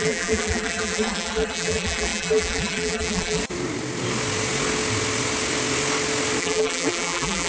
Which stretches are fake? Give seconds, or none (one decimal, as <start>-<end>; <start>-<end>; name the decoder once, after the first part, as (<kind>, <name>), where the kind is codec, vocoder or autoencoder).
0.0-3.4 (vocoder, BigVGAN v2); 6.4-7.5